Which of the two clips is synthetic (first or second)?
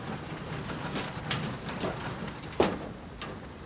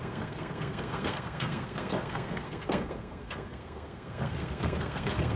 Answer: second